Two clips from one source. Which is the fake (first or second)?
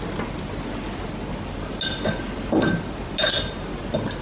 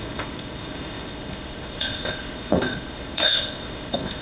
second